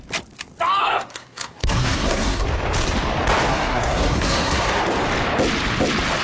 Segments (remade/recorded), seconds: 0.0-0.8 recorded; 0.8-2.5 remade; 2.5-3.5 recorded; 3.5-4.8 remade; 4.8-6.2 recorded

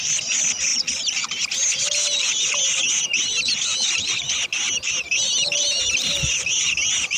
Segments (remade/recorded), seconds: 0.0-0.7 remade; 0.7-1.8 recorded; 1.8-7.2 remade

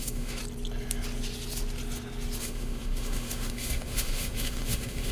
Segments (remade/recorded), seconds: 0.0-0.4 remade; 0.4-2.4 recorded; 2.4-5.1 remade

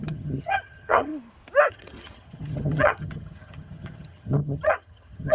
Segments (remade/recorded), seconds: 0.0-1.1 remade; 1.1-1.7 recorded; 1.7-5.3 remade

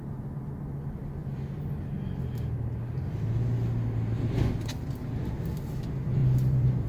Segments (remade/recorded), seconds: 0.0-6.2 recorded; 6.2-6.9 remade

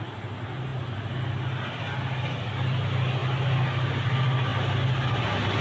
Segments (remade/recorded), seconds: 0.0-5.6 recorded

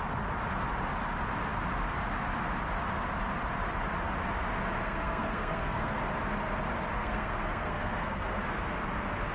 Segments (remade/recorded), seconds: 0.0-4.8 recorded; 4.8-6.0 remade; 6.0-6.9 recorded; 6.9-8.7 remade; 8.7-9.3 recorded